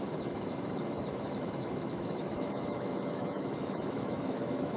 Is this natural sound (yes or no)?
no